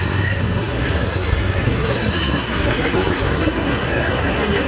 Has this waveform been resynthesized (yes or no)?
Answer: yes